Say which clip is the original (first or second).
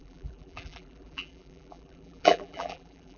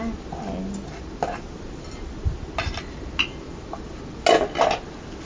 second